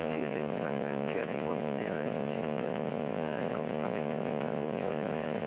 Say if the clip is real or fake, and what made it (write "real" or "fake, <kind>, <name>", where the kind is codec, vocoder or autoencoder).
fake, vocoder, Vocos